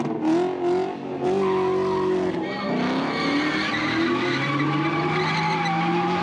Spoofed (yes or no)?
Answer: no